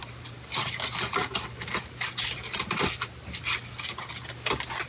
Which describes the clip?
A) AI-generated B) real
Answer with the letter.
B